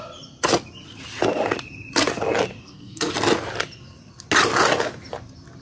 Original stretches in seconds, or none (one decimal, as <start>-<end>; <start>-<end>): 0.0-2.6; 3.1-5.6